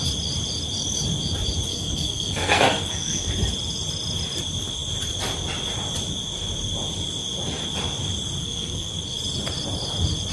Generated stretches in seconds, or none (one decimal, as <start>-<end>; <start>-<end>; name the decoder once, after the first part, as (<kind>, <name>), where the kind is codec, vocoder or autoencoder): 1.7-3.3 (codec, SNAC); 8.4-8.9